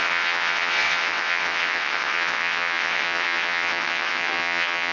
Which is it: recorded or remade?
remade